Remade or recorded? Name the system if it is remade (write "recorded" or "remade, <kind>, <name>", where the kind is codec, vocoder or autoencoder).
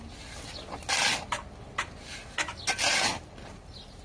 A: recorded